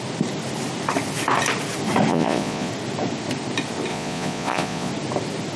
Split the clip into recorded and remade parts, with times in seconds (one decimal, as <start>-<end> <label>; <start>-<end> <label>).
0.0-2.1 recorded; 2.1-2.7 remade; 2.7-3.9 recorded; 3.9-4.9 remade; 4.9-5.6 recorded